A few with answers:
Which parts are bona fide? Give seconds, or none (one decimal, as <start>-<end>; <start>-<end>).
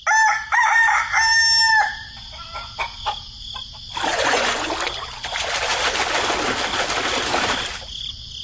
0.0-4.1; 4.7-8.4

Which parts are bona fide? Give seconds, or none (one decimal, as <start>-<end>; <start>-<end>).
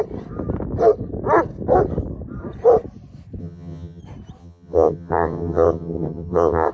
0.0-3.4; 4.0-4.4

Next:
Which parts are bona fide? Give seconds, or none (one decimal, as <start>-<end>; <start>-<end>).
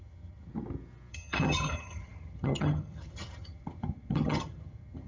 0.5-1.1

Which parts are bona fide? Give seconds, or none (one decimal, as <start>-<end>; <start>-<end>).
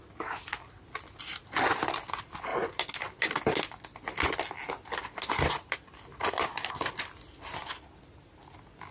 0.0-8.9